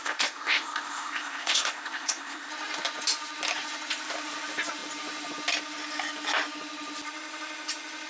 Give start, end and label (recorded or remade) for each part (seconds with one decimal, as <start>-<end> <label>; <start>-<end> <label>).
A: 0.0-2.5 remade; 2.5-8.1 recorded